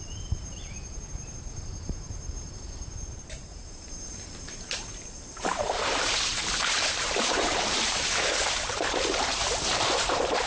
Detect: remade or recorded remade